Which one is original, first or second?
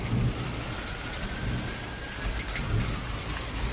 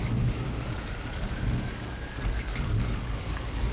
first